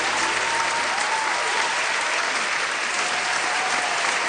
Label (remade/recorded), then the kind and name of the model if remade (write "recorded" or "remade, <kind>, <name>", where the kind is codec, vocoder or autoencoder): recorded